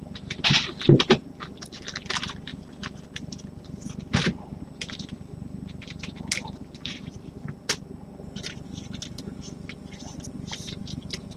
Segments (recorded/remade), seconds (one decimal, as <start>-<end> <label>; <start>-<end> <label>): 0.0-11.4 recorded